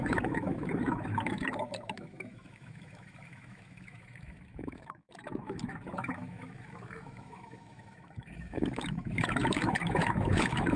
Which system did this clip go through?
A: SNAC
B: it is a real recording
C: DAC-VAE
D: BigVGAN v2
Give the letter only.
C